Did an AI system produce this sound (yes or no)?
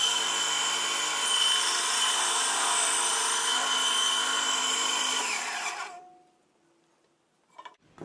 no